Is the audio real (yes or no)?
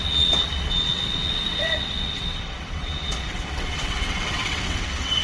no